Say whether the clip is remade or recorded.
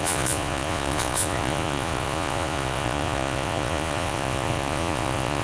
remade